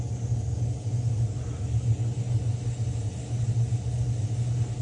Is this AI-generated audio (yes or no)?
no